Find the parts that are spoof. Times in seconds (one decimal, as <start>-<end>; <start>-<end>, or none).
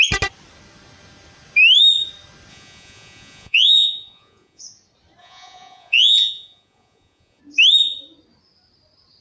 2.5-4.6; 5.2-7.4